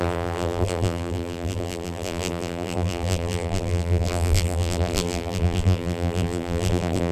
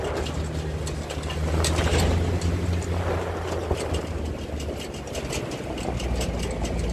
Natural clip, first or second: second